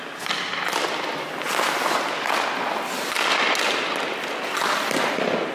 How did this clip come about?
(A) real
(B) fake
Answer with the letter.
A